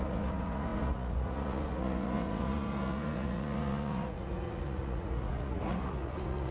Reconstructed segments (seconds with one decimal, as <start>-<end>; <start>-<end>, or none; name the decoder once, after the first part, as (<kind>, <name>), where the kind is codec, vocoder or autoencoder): 0.0-6.5 (vocoder, Vocos)